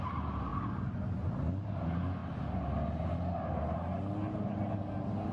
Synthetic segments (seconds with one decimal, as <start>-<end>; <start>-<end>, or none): none